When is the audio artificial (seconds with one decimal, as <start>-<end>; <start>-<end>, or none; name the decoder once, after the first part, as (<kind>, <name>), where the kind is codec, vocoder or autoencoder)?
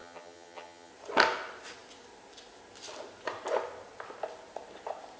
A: 0.0-0.9 (vocoder, HiFi-GAN)